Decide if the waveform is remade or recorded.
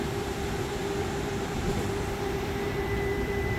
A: remade